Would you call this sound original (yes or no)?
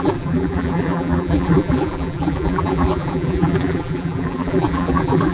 no